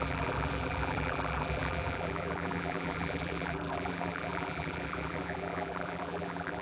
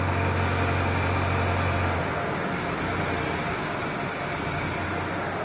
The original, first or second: second